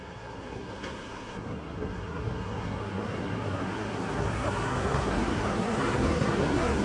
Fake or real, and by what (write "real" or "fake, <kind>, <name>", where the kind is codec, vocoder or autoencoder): fake, codec, SNAC